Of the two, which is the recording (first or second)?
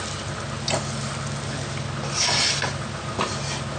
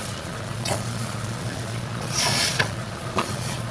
first